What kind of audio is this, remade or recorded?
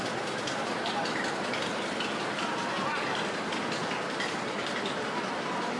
recorded